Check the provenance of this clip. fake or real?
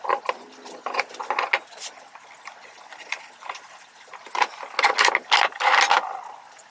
real